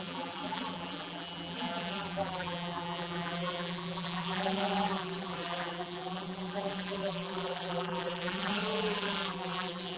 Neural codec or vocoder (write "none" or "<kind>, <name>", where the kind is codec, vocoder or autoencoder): vocoder, BigVGAN v2